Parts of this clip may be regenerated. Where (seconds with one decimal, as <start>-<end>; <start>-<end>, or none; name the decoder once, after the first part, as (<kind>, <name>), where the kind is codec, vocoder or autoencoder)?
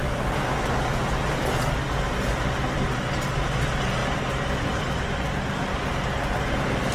none